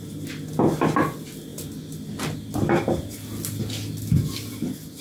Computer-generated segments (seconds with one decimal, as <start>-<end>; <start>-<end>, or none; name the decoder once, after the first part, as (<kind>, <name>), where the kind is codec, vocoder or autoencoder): none

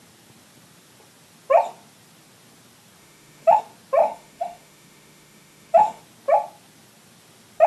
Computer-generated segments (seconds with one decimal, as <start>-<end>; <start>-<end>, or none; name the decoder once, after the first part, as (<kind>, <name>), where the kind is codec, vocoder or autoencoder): 3.0-3.6 (autoencoder, DAC-VAE); 4.0-6.0

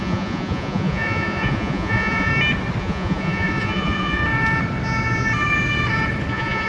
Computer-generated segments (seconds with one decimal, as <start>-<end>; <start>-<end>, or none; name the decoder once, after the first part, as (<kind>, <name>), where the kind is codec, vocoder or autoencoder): 0.0-2.3 (vocoder, Vocos); 2.8-4.2; 6.3-6.7